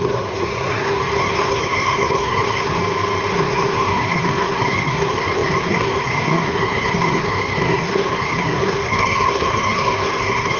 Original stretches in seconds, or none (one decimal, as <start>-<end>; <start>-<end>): 2.8-3.3